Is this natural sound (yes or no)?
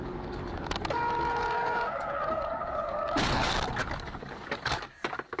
no